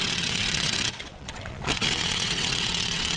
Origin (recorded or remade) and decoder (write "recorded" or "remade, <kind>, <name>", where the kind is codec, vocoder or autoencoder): remade, vocoder, WaveNeXt